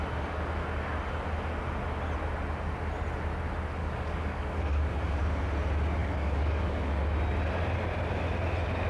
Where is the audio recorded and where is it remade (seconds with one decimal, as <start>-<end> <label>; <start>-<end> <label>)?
0.0-3.8 recorded; 3.8-5.2 remade; 5.2-6.0 recorded; 6.0-7.0 remade; 7.0-8.9 recorded